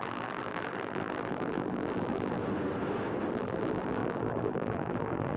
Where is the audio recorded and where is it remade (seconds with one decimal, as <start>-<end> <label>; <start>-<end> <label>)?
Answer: 0.0-2.4 remade; 2.4-3.3 recorded; 3.3-5.4 remade